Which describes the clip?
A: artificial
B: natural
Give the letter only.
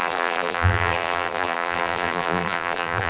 A